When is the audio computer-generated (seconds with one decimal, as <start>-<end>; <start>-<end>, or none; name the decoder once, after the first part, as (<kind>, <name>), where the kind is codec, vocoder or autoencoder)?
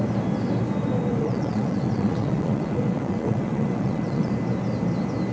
1.2-4.3 (vocoder, WaveNeXt)